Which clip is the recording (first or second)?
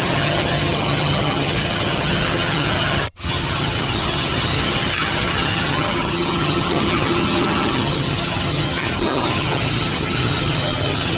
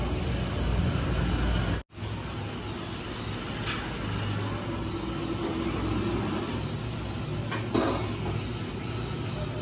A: second